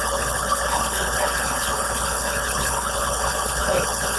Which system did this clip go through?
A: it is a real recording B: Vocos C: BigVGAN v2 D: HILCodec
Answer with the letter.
D